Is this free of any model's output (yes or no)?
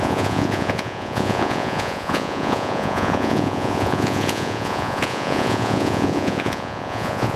no